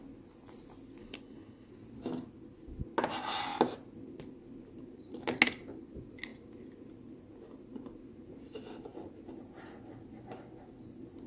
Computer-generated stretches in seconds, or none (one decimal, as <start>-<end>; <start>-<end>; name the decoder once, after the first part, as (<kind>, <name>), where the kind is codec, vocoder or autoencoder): 1.0-1.7 (codec, HILCodec)